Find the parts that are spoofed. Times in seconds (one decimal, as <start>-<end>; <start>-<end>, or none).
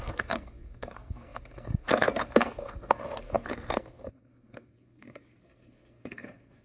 0.0-6.6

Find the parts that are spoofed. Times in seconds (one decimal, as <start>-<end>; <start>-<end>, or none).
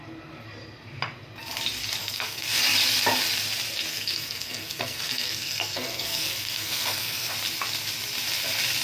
2.0-2.6; 3.9-7.3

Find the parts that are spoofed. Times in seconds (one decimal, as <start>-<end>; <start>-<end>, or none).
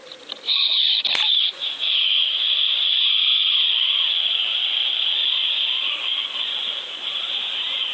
1.3-2.3; 2.8-7.9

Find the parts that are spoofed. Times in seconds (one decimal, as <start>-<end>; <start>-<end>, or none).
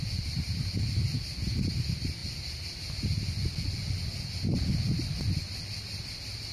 0.0-1.0; 1.8-2.2; 3.6-6.5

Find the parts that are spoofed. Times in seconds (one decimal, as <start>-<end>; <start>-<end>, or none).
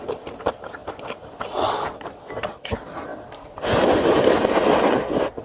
0.8-2.2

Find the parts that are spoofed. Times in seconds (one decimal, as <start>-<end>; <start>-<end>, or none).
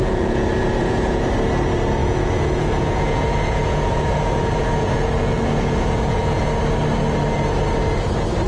0.0-1.3; 2.0-6.6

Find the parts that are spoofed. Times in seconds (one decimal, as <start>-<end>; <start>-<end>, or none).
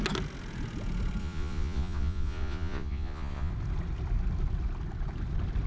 1.2-3.5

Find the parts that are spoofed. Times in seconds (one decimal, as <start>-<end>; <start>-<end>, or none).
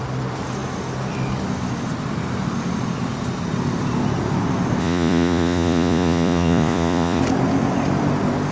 4.8-7.2